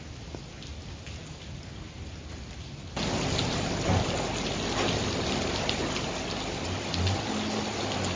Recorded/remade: recorded